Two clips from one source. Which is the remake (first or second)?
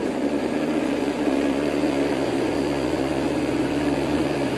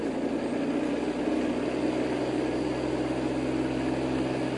first